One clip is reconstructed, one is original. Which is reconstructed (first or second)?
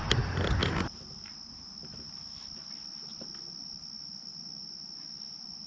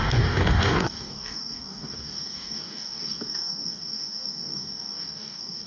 second